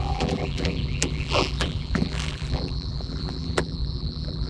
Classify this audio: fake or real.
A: fake